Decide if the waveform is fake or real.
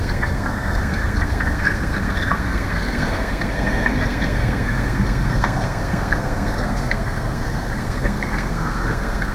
fake